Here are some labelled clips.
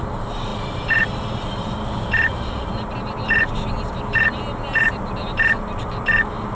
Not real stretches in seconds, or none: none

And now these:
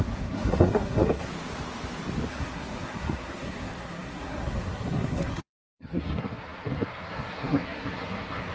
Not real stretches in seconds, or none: 0.0-1.3 (codec, SNAC); 2.3-8.5

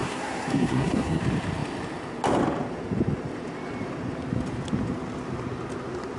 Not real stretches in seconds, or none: 0.0-1.2 (codec, SNAC)

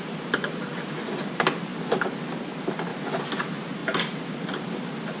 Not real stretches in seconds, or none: none

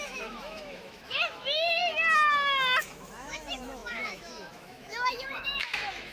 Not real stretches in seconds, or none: 0.0-1.8 (autoencoder, DAC-VAE); 2.8-6.1